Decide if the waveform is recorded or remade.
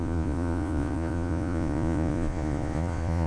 remade